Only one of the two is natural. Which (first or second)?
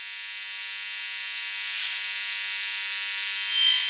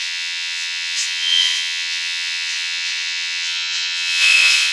first